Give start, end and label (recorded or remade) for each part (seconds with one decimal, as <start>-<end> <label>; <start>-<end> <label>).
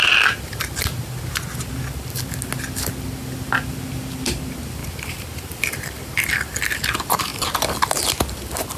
0.0-1.0 remade; 1.0-4.8 recorded; 4.8-6.6 remade; 6.6-8.8 recorded